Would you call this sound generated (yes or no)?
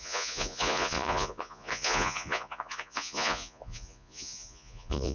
yes